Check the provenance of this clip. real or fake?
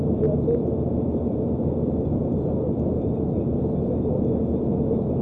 real